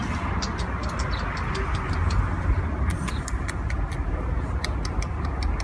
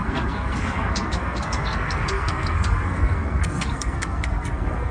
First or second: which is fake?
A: second